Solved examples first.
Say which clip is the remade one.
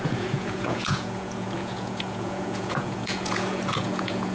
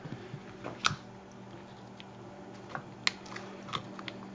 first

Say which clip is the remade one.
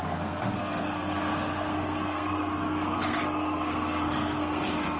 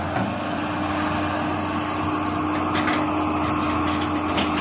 first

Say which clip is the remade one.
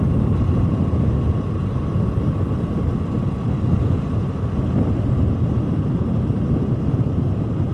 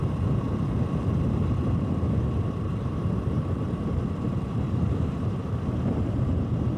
second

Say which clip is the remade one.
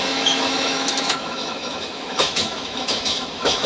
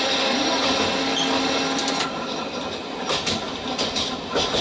first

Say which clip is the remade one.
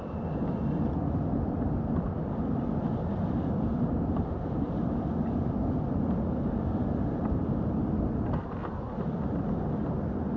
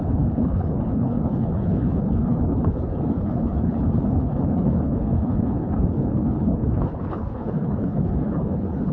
second